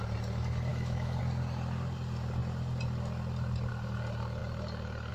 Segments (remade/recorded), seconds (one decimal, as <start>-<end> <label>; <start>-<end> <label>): 0.0-0.7 recorded; 0.7-1.2 remade; 1.2-5.1 recorded

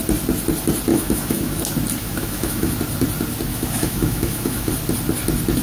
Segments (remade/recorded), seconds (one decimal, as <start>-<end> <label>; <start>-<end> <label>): 0.0-0.9 recorded; 0.9-1.6 remade; 1.6-2.0 recorded; 2.0-2.7 remade; 2.7-3.5 recorded; 3.5-4.7 remade; 4.7-5.6 recorded

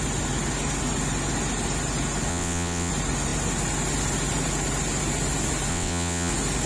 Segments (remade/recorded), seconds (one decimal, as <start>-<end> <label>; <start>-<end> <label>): 0.0-2.3 recorded; 2.3-2.9 remade; 2.9-5.7 recorded; 5.7-6.3 remade; 6.3-6.7 recorded

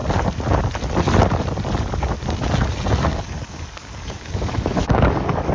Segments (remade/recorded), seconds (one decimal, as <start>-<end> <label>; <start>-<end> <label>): 0.0-3.1 recorded; 3.1-5.5 remade

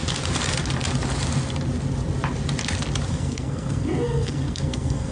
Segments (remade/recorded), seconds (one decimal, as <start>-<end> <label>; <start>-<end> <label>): 0.0-3.1 recorded; 3.1-5.1 remade

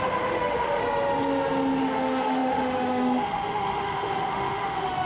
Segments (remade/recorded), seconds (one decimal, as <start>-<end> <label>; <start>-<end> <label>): 0.0-0.8 remade; 0.8-1.8 recorded; 1.8-5.1 remade

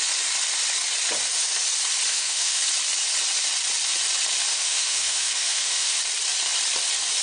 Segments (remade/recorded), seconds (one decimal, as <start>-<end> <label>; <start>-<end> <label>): 0.0-2.1 recorded; 2.1-2.6 remade; 2.6-4.5 recorded; 4.5-6.0 remade; 6.0-7.2 recorded